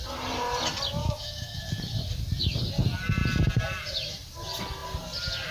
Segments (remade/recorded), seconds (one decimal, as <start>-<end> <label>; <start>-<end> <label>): 0.0-1.0 recorded; 1.0-1.6 remade; 1.6-5.5 recorded